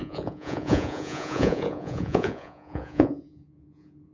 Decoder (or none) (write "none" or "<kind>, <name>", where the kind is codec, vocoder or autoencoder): vocoder, Vocos